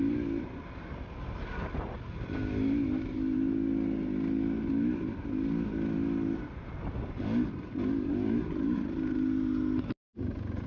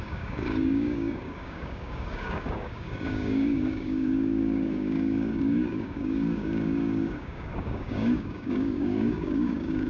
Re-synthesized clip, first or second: second